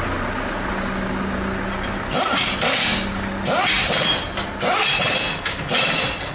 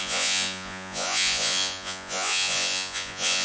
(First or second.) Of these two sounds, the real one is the first